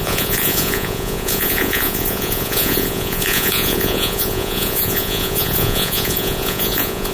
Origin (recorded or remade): remade